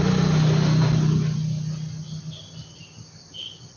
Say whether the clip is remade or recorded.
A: recorded